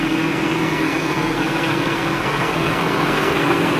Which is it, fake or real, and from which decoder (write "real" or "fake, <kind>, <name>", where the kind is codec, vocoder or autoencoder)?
fake, codec, SNAC